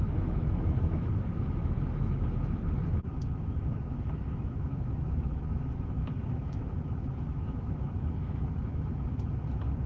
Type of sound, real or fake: fake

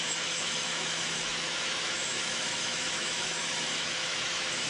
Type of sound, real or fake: fake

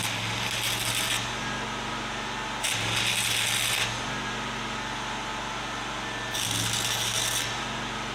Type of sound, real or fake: real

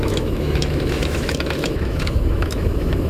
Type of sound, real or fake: fake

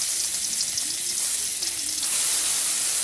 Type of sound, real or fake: real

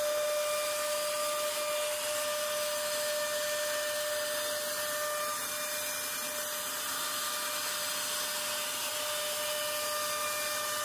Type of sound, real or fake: real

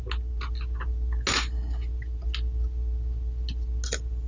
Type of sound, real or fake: real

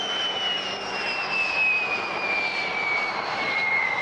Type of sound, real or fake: real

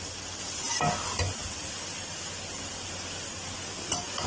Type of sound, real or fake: real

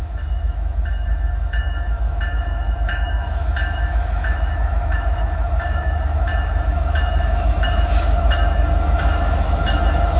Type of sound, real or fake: fake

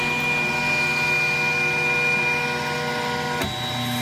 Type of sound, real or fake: real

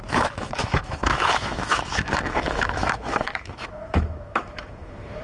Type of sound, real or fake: fake